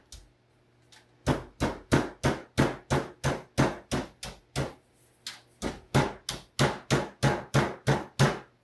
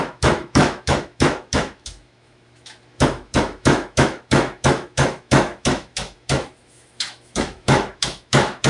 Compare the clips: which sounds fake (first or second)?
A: second